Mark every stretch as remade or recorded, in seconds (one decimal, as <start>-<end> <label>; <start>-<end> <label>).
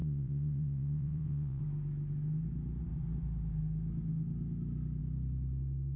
0.0-1.6 remade; 1.6-6.0 recorded